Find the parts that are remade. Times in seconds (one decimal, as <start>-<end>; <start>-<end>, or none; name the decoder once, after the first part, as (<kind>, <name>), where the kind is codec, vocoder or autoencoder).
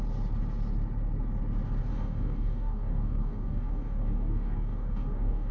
1.9-5.5 (codec, DAC)